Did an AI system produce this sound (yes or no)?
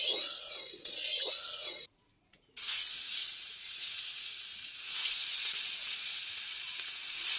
yes